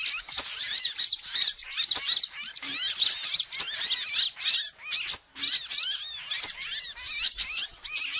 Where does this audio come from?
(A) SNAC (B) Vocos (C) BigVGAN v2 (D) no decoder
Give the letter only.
D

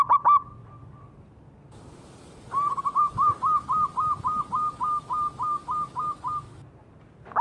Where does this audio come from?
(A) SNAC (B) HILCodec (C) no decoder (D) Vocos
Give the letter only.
C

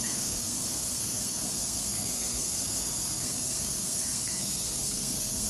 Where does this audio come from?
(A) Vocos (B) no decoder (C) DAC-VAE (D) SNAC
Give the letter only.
D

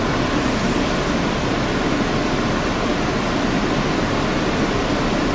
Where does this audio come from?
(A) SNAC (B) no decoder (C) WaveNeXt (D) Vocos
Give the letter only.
B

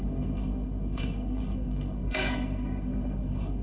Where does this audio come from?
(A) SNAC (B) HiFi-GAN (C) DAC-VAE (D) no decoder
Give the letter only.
A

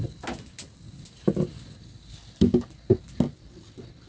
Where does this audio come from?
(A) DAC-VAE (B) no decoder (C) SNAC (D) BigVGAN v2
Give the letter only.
B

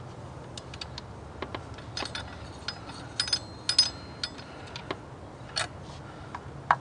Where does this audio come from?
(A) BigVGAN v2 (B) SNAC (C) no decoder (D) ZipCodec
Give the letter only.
C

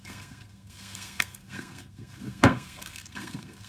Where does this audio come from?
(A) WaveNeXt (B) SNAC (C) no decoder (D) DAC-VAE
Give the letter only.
B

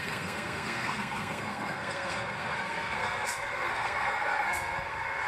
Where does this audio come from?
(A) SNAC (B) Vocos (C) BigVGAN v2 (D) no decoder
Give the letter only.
A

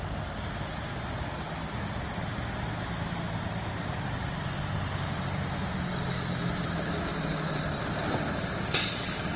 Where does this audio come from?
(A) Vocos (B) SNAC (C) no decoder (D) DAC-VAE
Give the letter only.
C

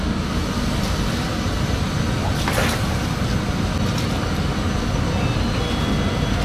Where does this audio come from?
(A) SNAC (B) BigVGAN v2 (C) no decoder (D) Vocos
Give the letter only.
C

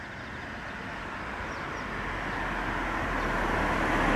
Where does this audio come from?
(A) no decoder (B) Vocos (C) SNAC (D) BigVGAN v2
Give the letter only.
A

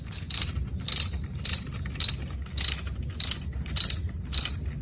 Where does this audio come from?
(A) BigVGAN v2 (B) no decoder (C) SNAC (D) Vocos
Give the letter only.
B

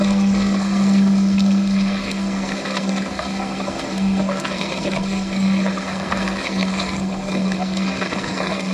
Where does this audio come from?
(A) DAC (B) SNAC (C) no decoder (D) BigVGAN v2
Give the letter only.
B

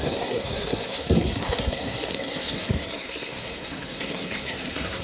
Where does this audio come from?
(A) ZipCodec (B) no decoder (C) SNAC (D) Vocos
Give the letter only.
C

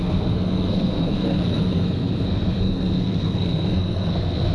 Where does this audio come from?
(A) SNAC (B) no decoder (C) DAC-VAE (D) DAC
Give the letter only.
A